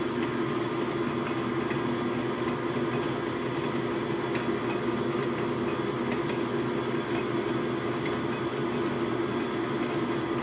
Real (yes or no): yes